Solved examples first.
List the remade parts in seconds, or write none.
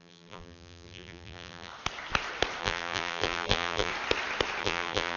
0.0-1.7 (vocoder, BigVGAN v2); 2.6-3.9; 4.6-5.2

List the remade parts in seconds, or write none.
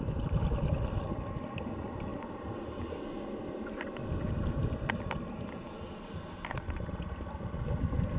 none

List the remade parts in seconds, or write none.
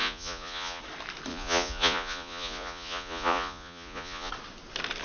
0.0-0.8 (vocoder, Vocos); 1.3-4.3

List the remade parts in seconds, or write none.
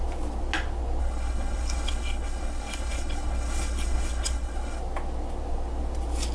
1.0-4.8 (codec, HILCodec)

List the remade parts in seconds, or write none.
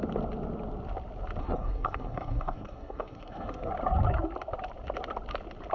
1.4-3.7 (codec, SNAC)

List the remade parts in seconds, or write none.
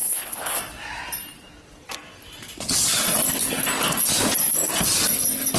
0.0-0.6 (codec, HILCodec)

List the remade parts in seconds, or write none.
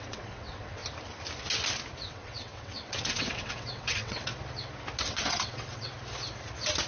0.0-0.8 (vocoder, WaveNeXt); 2.1-4.3; 5.0-5.9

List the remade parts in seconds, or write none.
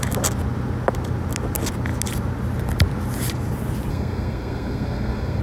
3.9-5.4 (codec, SNAC)